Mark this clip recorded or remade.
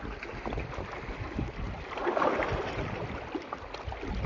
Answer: recorded